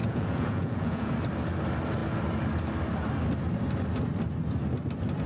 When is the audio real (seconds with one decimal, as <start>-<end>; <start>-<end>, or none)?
1.1-5.3